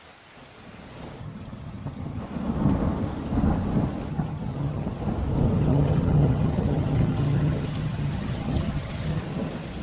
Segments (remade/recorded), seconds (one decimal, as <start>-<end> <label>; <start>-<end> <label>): 0.0-1.2 recorded; 1.2-2.2 remade; 2.2-4.1 recorded; 4.1-5.0 remade; 5.0-5.6 recorded; 5.6-9.2 remade; 9.2-9.8 recorded